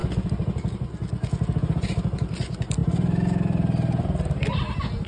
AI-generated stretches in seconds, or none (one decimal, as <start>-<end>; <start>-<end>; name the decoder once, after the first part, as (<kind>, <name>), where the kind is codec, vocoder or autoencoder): none